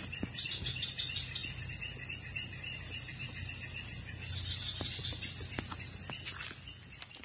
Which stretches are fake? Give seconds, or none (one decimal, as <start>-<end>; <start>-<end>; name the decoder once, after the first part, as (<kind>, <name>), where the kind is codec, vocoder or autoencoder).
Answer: none

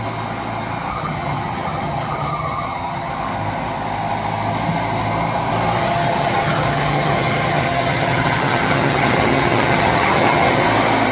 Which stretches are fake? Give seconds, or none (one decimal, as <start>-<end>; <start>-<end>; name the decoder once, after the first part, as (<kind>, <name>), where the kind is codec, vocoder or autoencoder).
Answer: 0.9-3.1 (vocoder, HiFi-GAN); 5.8-10.6